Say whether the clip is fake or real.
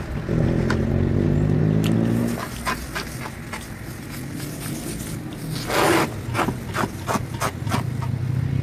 real